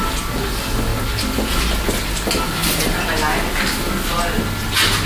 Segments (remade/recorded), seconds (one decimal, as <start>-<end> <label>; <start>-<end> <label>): 0.0-5.1 recorded